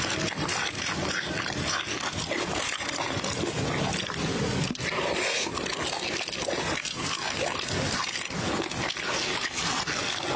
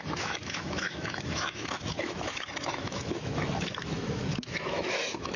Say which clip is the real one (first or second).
first